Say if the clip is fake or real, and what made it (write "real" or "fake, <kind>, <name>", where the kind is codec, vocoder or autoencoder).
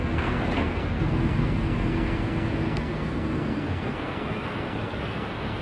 fake, codec, SNAC